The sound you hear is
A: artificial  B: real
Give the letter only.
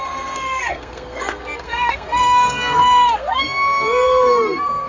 A